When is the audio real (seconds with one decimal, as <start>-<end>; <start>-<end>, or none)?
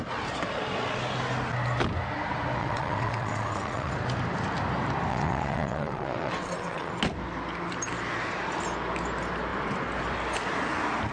0.0-2.6; 3.9-5.1; 6.9-11.1